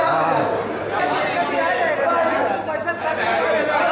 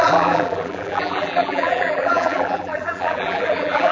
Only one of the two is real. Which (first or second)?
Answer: first